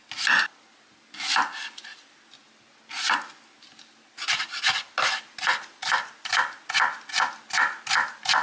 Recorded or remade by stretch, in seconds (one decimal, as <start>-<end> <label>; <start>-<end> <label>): 0.0-8.4 recorded